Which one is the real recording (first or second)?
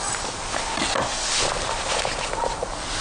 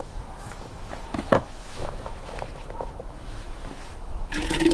first